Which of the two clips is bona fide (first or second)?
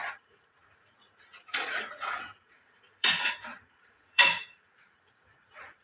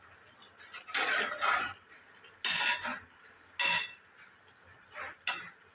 second